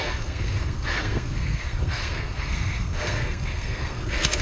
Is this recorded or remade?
remade